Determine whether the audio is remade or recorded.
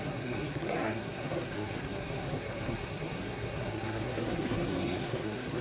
remade